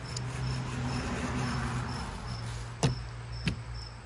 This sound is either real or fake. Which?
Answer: real